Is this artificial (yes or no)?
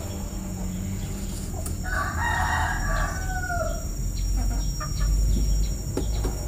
no